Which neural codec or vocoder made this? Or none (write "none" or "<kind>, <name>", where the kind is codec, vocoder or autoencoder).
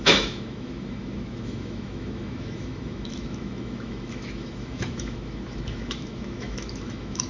autoencoder, DAC-VAE